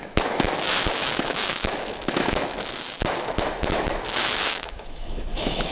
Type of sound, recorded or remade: remade